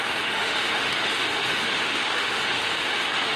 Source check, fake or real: fake